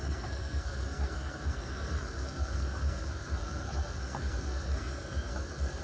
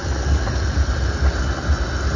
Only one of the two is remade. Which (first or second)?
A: first